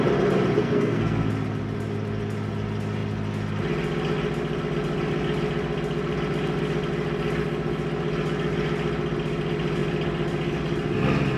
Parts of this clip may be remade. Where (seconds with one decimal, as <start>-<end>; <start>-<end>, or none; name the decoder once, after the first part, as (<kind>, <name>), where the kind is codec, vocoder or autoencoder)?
0.6-1.3 (codec, SNAC)